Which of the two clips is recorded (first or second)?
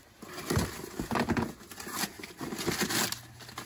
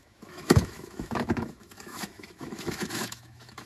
first